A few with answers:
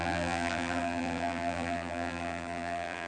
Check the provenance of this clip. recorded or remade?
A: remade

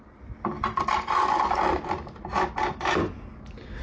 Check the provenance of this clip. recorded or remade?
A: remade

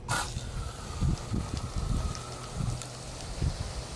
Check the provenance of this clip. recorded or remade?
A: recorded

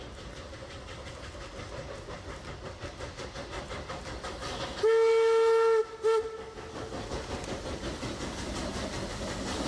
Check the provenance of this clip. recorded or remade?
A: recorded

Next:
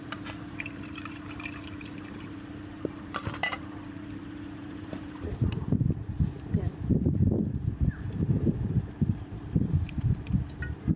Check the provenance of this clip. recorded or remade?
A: remade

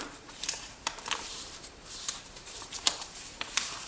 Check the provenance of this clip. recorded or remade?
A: remade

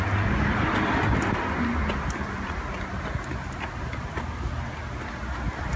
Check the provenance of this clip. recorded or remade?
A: recorded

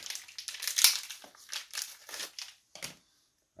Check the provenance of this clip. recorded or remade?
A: recorded